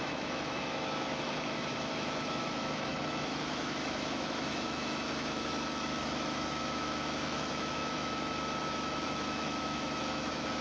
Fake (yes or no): yes